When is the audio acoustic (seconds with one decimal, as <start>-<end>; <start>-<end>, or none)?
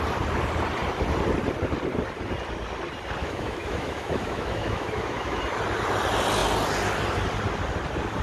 0.0-3.2; 5.4-8.2